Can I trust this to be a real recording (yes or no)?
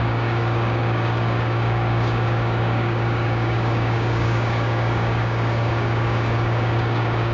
no